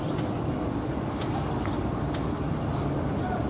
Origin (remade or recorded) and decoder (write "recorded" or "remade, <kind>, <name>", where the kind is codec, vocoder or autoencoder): recorded